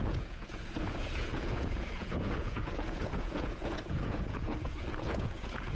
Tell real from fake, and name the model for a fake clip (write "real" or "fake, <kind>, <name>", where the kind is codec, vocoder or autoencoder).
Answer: fake, vocoder, Vocos